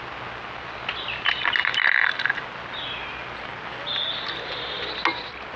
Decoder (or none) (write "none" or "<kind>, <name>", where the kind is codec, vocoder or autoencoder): none